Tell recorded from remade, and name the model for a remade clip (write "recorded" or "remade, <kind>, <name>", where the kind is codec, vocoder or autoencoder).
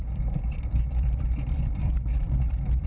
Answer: remade, vocoder, BigVGAN v2